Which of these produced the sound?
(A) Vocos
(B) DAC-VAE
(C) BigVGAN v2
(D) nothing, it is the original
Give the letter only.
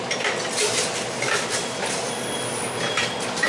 D